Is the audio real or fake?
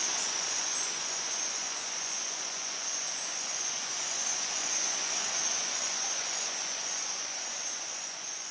fake